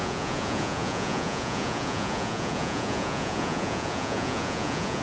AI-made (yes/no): yes